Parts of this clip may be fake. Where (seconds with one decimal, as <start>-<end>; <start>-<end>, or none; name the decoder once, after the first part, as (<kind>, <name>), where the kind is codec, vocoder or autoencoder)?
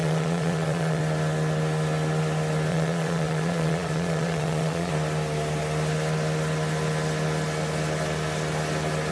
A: 0.0-1.0 (vocoder, Vocos); 2.7-4.9